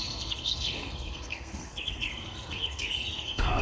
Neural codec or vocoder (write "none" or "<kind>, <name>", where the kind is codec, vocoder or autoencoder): codec, SNAC